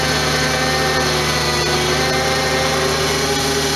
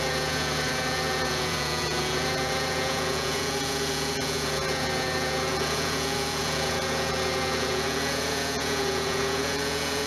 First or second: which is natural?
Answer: first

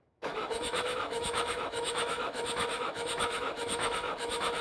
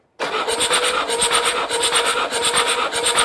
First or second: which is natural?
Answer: second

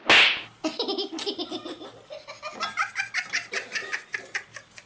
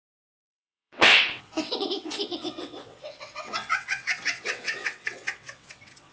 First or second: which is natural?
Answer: first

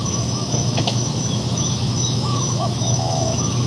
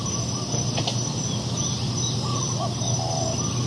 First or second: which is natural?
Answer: second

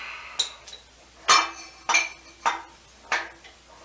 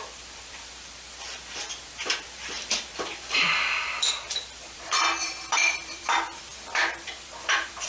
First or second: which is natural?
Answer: first